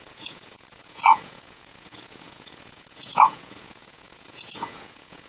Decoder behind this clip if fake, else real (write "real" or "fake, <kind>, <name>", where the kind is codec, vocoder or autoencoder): fake, vocoder, Vocos